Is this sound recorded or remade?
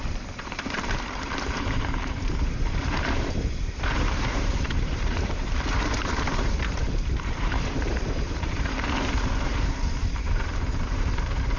remade